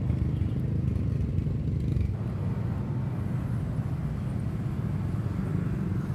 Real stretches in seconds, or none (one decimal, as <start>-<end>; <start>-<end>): 0.0-6.1